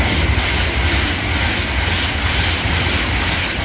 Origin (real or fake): real